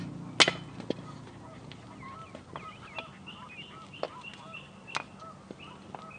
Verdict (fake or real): real